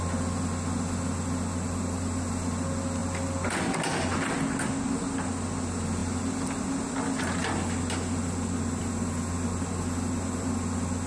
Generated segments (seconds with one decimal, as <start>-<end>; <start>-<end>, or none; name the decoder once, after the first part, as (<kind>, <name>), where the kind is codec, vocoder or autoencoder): none